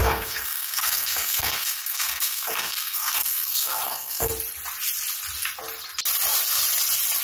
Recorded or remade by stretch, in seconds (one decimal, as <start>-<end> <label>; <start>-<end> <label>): 0.0-4.3 remade; 4.3-7.2 recorded